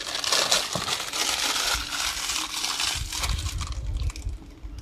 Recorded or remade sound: recorded